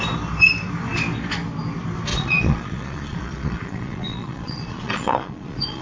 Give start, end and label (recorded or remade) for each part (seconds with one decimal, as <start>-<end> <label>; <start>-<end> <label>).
0.0-2.1 recorded; 2.1-5.8 remade